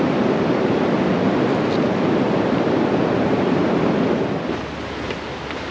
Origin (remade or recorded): recorded